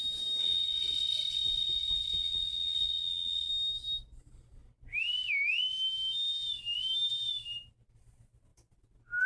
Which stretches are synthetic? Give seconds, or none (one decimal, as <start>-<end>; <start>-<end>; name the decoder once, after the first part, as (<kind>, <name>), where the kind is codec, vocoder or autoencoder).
0.4-3.5 (vocoder, WaveNeXt)